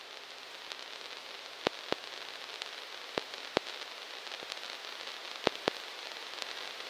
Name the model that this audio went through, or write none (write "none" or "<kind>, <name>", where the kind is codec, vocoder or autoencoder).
none